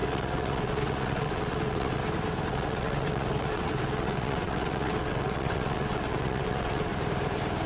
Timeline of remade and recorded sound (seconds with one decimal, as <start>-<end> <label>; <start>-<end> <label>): 0.0-2.0 remade; 2.0-2.5 recorded; 2.5-6.9 remade; 6.9-7.7 recorded